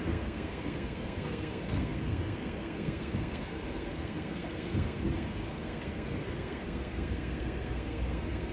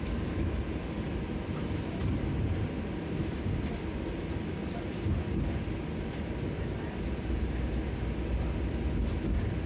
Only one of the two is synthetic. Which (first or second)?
first